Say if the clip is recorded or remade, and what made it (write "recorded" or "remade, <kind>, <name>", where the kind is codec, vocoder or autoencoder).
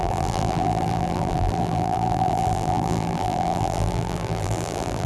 remade, vocoder, BigVGAN v2